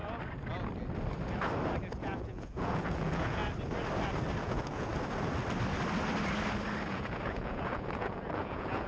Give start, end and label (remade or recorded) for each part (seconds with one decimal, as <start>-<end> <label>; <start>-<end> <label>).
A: 0.0-2.0 recorded; 2.0-3.4 remade; 3.4-4.4 recorded; 4.4-4.9 remade; 4.9-6.9 recorded; 6.9-8.9 remade